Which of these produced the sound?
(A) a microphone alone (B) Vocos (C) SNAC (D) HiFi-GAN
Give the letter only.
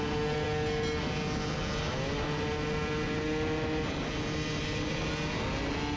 A